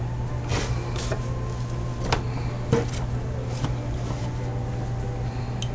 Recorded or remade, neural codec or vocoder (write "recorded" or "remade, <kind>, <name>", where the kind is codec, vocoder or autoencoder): recorded